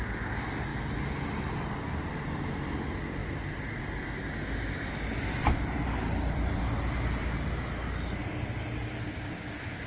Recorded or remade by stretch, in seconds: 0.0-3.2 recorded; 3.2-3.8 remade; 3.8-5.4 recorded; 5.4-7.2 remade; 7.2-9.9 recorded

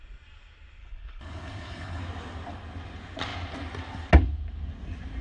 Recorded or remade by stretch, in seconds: 0.0-0.8 recorded; 0.8-2.0 remade; 2.0-5.2 recorded

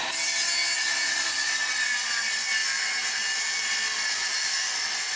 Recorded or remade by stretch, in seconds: 0.0-2.6 recorded; 2.6-3.7 remade; 3.7-4.2 recorded; 4.2-4.7 remade; 4.7-5.2 recorded

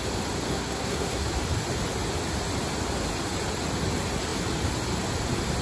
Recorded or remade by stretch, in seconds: 0.0-0.5 recorded; 0.5-1.3 remade; 1.3-5.6 recorded

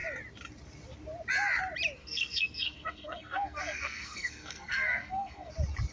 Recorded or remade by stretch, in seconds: 0.0-2.0 recorded; 2.0-5.5 remade; 5.5-5.9 recorded

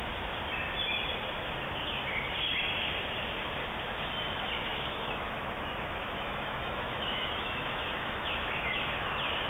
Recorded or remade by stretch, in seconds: 0.0-4.7 recorded; 4.7-8.9 remade; 8.9-9.5 recorded

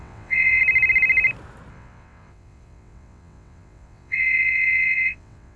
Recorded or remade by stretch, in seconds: 0.0-0.6 remade; 0.6-1.7 recorded; 1.7-5.6 remade

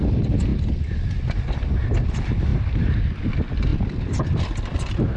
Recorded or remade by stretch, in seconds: 0.0-3.7 recorded; 3.7-5.2 remade